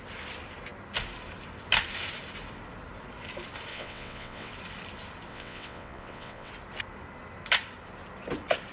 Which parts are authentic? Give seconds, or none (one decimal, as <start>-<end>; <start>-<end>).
0.0-3.7; 4.5-5.3; 6.5-8.7